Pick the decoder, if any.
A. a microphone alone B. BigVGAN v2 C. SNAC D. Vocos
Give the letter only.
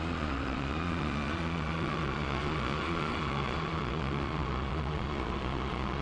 D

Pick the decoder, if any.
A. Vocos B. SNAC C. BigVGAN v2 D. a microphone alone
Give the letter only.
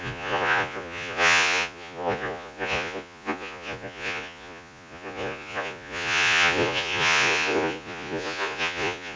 A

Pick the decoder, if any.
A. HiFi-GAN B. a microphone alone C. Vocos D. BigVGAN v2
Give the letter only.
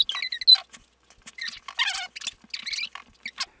B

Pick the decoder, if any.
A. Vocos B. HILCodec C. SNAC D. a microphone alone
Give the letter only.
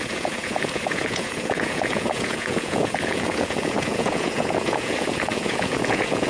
A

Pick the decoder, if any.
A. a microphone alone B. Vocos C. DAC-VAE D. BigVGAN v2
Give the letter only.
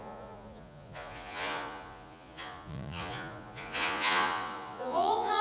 B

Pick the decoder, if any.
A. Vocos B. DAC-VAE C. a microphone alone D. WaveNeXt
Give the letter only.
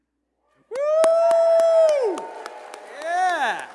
C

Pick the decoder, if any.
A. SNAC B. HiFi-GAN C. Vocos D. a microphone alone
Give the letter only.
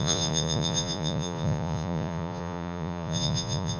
C